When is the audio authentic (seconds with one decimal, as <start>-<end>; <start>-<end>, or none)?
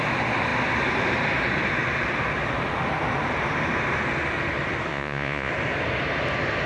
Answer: 0.0-4.9; 5.5-6.7